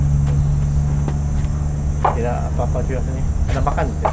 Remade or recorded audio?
recorded